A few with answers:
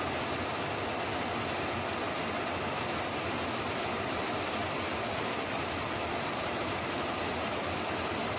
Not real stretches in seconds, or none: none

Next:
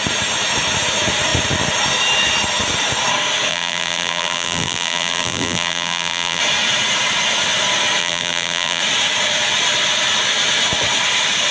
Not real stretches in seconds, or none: 3.5-6.4 (vocoder, BigVGAN v2); 8.0-8.8